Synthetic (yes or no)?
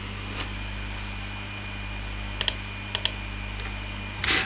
no